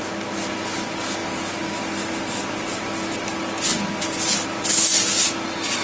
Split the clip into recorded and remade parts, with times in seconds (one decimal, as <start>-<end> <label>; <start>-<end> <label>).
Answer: 0.0-5.8 recorded